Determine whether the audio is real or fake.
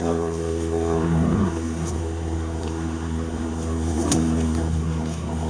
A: fake